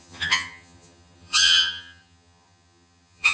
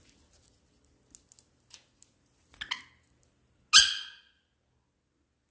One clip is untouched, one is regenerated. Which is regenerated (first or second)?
first